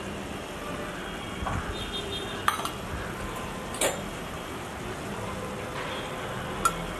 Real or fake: real